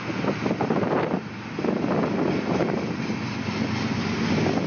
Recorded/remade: recorded